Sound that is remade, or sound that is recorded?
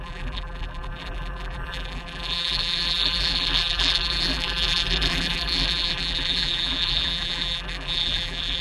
remade